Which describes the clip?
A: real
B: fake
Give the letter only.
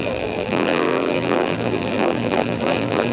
B